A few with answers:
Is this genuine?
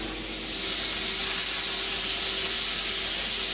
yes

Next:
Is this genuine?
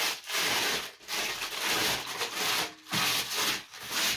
yes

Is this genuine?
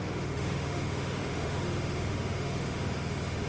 no